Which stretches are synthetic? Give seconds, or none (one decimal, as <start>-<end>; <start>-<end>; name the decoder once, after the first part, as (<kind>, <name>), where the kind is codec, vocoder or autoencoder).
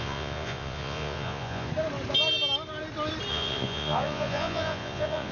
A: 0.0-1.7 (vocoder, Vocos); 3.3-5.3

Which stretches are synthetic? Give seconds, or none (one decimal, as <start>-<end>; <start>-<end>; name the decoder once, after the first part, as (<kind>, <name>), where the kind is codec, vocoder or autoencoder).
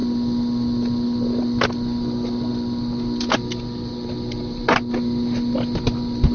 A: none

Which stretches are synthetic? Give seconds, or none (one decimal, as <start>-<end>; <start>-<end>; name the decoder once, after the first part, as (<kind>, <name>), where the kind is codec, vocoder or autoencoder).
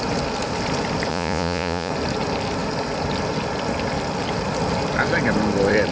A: 1.1-1.9 (vocoder, Vocos)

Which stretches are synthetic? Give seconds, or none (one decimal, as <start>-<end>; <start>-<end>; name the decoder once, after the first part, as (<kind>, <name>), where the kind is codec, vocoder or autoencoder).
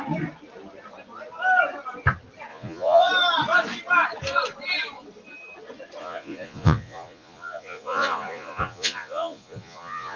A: 2.5-3.1 (vocoder, Vocos); 6.0-10.2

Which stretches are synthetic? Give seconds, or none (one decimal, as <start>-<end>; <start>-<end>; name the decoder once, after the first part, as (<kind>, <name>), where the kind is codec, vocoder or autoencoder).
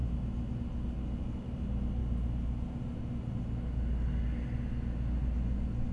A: none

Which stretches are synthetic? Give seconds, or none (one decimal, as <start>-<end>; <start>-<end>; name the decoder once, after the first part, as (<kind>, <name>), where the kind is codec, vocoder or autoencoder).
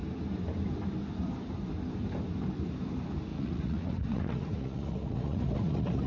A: 3.3-6.1 (vocoder, Vocos)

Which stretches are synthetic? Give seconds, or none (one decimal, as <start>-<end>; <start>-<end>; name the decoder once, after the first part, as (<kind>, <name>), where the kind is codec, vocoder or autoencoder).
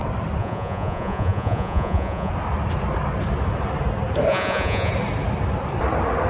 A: 0.4-2.3 (vocoder, Vocos); 4.3-4.9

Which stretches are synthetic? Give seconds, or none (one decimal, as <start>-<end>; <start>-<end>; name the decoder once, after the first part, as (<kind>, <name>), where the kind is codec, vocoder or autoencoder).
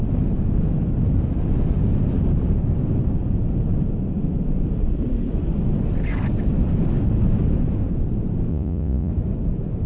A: 8.5-9.1 (vocoder, Vocos)